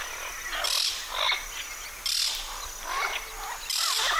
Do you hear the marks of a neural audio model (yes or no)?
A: no